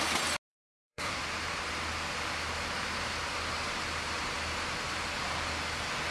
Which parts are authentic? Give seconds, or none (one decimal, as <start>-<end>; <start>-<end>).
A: 0.0-0.5; 1.2-6.1